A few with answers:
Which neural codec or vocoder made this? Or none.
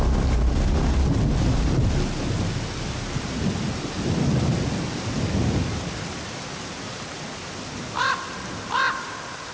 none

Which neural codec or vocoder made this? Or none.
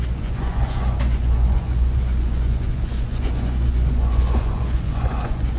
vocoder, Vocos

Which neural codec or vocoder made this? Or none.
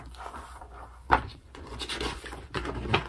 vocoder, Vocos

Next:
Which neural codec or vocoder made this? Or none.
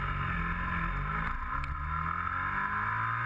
none